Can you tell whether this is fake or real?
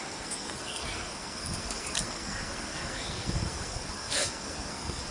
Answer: fake